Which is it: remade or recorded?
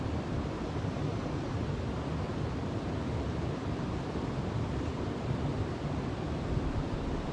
recorded